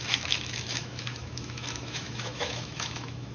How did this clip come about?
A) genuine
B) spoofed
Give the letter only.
B